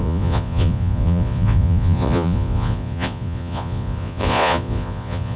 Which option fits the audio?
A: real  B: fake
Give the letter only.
B